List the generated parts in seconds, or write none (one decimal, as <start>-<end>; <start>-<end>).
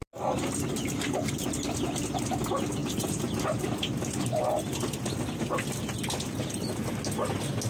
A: none